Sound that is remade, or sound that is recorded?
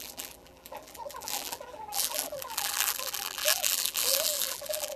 remade